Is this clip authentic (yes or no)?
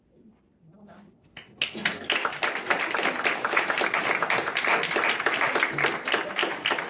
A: yes